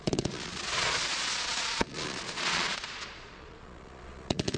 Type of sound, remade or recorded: remade